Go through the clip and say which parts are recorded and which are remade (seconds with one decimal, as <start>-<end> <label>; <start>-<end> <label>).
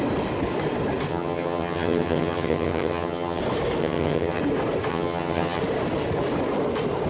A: 0.0-1.1 recorded; 1.1-3.4 remade; 3.4-3.8 recorded; 3.8-4.4 remade; 4.4-4.9 recorded; 4.9-5.6 remade; 5.6-7.1 recorded